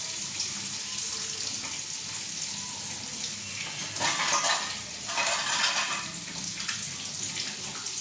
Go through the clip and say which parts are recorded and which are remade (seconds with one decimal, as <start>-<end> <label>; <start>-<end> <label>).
0.0-8.0 recorded